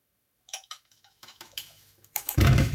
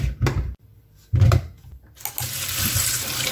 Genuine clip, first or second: second